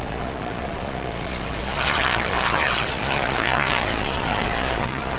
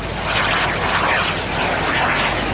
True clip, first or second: second